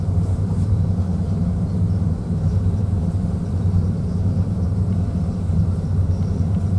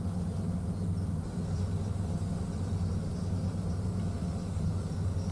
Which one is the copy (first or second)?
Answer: first